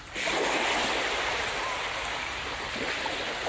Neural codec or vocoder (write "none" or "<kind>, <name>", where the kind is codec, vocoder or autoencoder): none